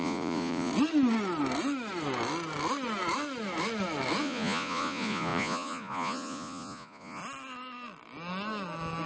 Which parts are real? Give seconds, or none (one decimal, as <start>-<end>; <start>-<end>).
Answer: 0.7-4.2; 7.2-9.1